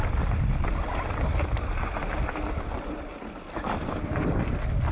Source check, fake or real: real